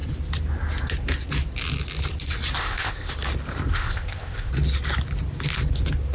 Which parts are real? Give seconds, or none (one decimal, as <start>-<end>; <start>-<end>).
0.0-2.6; 3.1-3.7; 4.5-6.1

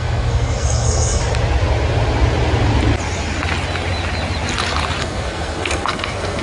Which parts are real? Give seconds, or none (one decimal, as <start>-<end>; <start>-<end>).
1.2-5.0

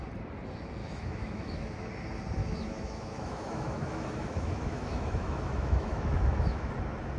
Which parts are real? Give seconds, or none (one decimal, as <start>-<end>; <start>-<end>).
0.0-0.8; 1.9-2.4; 6.7-7.2

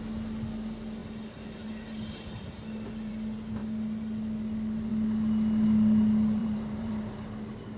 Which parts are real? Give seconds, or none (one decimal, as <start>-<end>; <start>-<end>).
0.0-6.4; 6.9-7.8

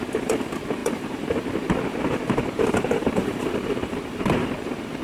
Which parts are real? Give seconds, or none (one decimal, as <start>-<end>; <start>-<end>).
none

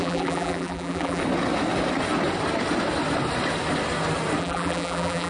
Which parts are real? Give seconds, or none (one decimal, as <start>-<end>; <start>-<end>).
1.2-4.4

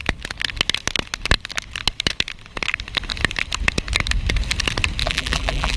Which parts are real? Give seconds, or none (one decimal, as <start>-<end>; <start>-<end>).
0.0-5.0